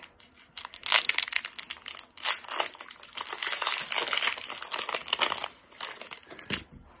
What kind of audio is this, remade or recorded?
recorded